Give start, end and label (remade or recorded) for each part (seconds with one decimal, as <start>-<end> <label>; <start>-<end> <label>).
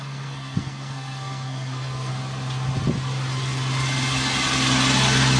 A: 0.0-2.1 remade; 2.1-5.4 recorded